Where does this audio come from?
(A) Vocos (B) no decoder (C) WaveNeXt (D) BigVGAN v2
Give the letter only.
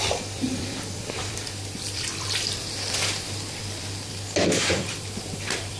D